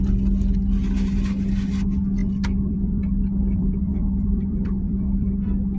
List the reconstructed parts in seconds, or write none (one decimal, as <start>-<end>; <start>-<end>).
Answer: 2.2-5.8